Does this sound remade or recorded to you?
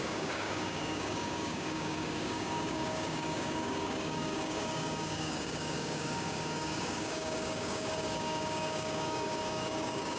remade